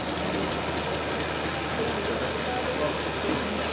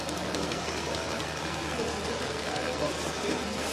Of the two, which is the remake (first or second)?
second